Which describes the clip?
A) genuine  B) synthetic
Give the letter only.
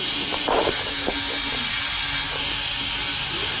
A